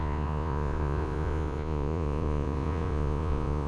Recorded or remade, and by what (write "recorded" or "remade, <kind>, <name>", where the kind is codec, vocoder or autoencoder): remade, vocoder, Vocos